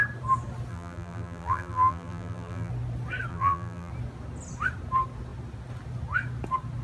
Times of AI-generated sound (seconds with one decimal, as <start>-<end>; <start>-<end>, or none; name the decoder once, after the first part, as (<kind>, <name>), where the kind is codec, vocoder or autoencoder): 0.7-2.7 (vocoder, BigVGAN v2); 3.3-3.9